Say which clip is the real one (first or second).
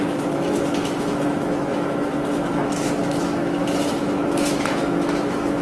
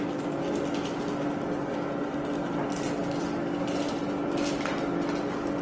second